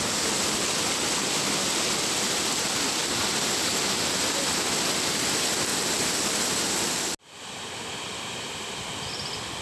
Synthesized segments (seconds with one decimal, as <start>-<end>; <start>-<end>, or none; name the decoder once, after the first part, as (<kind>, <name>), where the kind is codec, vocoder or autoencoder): none

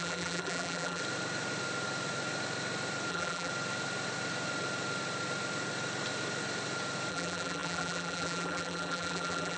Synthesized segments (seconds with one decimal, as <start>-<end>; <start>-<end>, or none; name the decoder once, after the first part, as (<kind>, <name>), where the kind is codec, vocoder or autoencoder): 0.0-1.0 (vocoder, BigVGAN v2); 3.1-3.5; 7.1-9.6